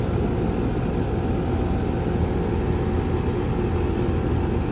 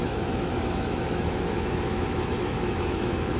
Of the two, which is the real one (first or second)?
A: first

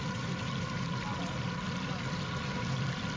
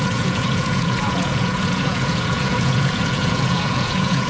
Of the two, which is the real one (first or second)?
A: first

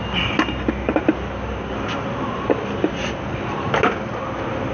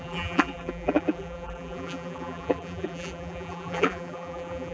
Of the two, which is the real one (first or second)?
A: first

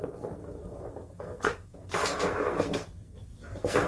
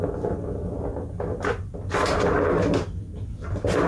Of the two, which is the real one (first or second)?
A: second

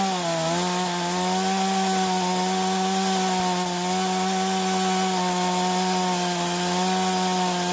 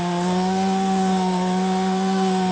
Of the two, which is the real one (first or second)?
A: first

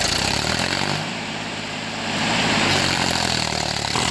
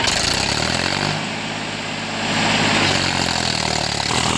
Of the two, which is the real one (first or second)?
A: second